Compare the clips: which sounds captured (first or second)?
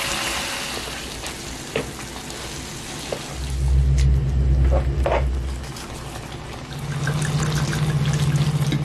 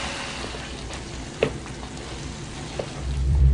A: first